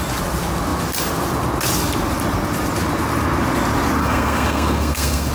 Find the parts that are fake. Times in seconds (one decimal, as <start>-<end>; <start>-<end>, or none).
4.0-5.3